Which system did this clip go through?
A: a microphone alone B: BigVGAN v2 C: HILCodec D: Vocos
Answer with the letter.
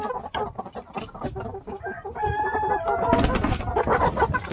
A